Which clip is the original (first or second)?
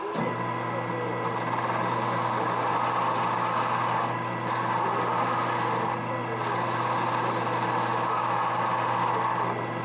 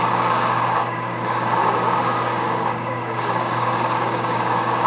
first